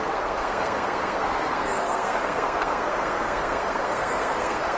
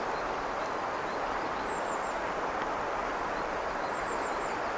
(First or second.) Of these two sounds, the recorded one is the second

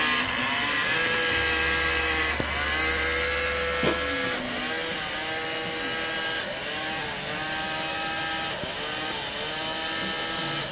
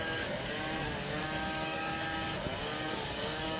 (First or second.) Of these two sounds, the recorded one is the first